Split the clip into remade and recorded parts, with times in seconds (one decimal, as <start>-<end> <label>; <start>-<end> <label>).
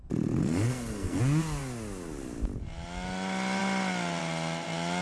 0.0-0.4 recorded; 0.4-1.2 remade; 1.2-5.0 recorded